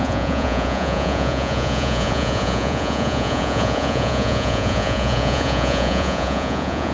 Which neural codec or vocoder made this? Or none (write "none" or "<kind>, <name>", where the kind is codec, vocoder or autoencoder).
vocoder, Vocos